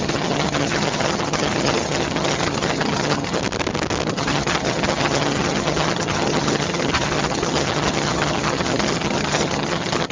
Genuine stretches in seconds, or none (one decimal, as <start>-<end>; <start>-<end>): 3.4-4.1